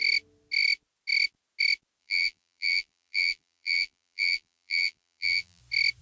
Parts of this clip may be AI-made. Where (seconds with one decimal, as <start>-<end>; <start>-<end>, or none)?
2.0-5.6